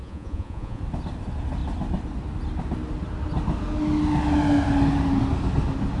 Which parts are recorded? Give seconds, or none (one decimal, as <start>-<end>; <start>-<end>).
0.8-6.0